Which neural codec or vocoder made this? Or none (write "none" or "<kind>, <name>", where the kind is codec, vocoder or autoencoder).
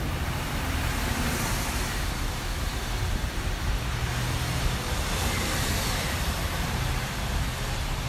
none